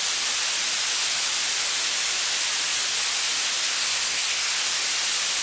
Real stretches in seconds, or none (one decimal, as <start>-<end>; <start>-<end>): 0.0-3.6; 4.5-5.4